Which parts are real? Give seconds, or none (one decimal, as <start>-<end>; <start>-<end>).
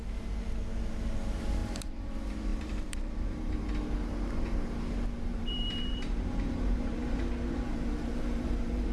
0.0-1.6; 2.1-2.5; 3.7-5.3